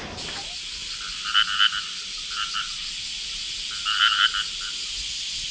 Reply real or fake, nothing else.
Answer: real